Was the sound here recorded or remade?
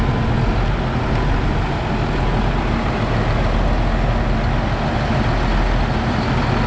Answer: recorded